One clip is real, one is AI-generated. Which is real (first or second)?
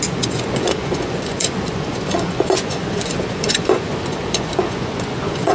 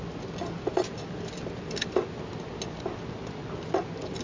second